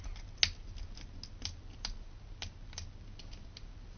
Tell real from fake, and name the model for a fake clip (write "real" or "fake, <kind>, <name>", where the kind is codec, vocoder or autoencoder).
real